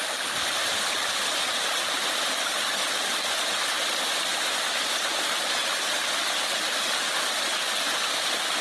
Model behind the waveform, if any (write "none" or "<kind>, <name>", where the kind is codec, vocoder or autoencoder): none